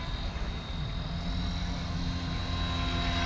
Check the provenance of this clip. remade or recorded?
recorded